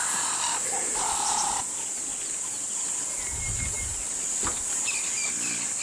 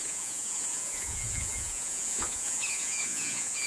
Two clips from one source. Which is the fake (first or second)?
second